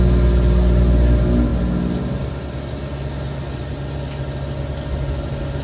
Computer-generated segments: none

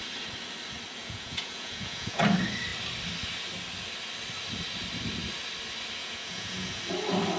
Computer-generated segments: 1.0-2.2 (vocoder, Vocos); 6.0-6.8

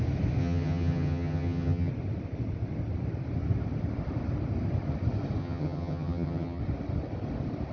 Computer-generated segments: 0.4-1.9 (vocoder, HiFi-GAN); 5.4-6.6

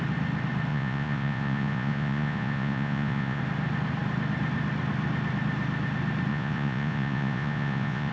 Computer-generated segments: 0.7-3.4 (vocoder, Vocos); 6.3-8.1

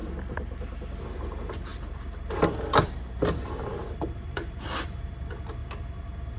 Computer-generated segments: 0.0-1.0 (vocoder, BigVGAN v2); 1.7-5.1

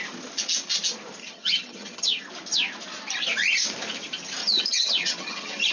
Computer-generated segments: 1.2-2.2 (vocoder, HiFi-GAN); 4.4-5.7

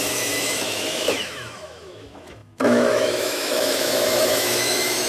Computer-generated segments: 0.0-5.1 (autoencoder, DAC-VAE)

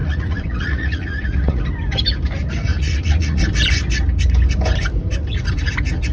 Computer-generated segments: 0.0-1.6 (vocoder, Vocos); 2.7-3.4